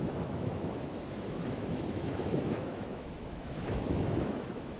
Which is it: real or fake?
fake